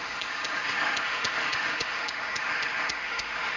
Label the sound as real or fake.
fake